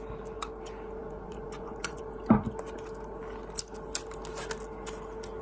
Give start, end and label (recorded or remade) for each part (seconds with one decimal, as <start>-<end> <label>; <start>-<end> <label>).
0.0-1.0 recorded; 1.0-2.0 remade; 2.0-5.4 recorded